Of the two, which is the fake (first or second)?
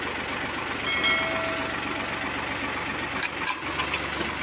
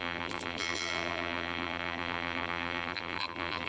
second